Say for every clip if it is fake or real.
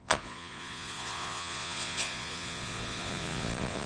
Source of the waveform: fake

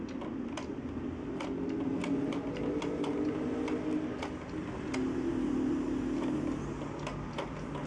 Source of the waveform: real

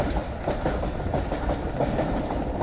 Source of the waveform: fake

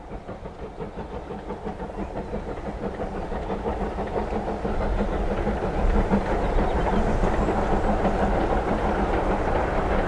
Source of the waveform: real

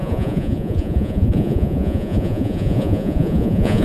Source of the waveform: fake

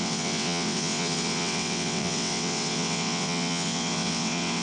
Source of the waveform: fake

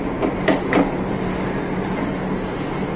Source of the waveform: real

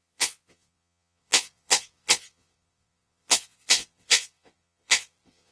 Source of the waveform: fake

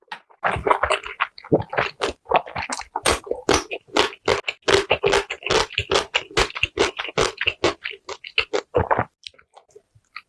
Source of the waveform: real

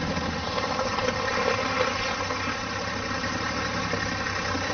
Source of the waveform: fake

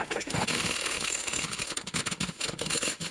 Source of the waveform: fake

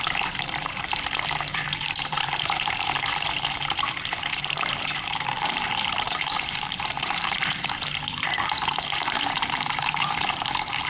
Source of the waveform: fake